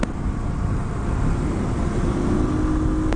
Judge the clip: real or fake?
real